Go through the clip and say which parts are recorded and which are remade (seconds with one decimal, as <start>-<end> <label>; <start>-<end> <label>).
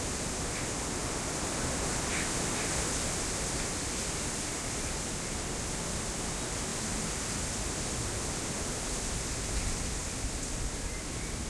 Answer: 0.0-11.5 recorded